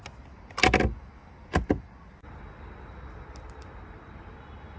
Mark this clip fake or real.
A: real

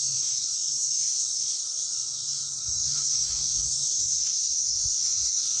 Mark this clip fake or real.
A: fake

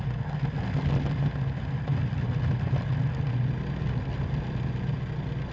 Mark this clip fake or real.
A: real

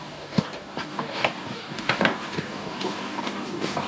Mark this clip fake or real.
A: fake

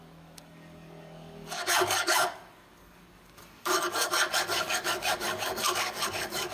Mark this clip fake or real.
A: fake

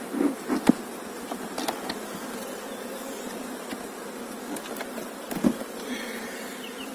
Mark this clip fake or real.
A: real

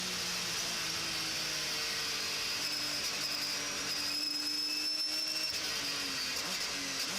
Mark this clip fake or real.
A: real